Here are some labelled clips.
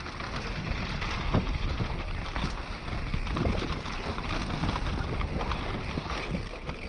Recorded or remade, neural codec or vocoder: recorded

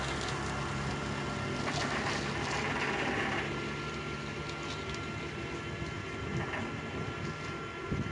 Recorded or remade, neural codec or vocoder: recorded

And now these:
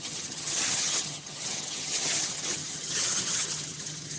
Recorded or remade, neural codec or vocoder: remade, vocoder, HiFi-GAN